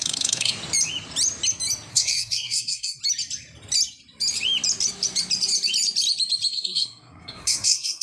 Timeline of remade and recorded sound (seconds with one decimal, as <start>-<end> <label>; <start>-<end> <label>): 0.0-0.6 remade; 0.6-1.9 recorded; 1.9-3.0 remade; 3.0-6.5 recorded; 6.5-8.0 remade